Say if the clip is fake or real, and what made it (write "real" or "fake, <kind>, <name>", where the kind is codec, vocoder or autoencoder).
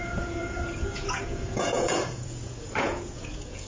fake, vocoder, Vocos